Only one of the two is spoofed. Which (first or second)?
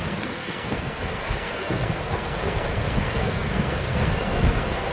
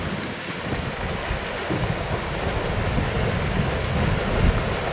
first